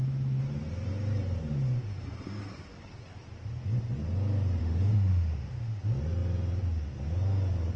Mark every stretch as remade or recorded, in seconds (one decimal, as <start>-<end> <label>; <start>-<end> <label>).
0.0-4.6 recorded; 4.6-5.8 remade; 5.8-7.8 recorded